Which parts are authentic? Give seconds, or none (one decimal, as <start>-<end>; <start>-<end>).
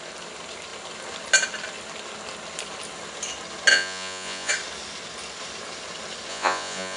0.0-3.7; 4.5-6.3